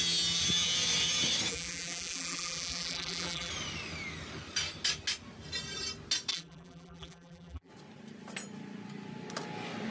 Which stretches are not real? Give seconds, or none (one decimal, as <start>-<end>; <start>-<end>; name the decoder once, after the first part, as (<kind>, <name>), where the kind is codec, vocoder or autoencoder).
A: 1.5-3.5 (vocoder, BigVGAN v2); 6.3-7.7